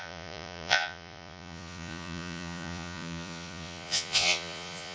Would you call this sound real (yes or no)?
no